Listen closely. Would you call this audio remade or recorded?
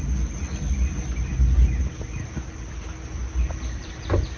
recorded